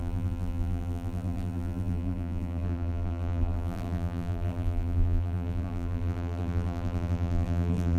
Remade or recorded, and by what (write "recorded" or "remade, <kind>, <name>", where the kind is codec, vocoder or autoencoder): remade, vocoder, BigVGAN v2